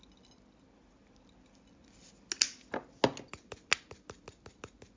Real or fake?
real